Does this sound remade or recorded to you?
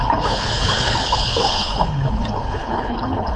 remade